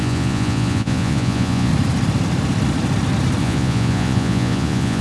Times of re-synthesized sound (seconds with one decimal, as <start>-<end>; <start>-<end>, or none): 0.0-1.7; 3.4-5.0